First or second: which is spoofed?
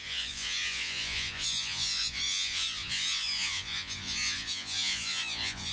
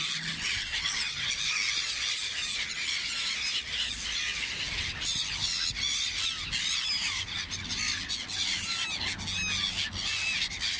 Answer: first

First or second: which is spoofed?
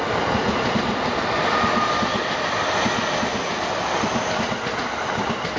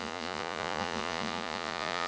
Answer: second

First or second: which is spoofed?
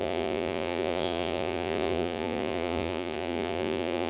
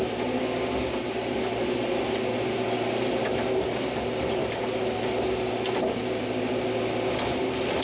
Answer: first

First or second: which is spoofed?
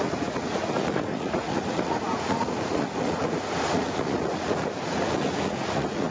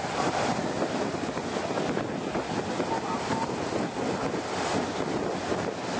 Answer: first